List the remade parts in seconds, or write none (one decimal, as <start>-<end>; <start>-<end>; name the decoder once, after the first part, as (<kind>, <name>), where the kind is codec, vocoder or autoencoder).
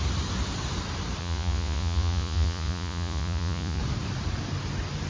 1.2-3.8 (vocoder, Vocos)